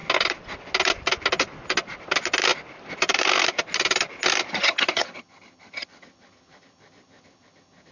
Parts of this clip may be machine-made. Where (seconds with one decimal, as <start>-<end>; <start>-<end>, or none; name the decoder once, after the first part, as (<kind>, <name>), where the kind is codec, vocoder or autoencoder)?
4.5-7.9 (vocoder, HiFi-GAN)